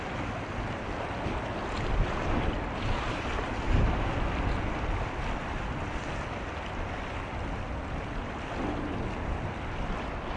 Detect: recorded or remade recorded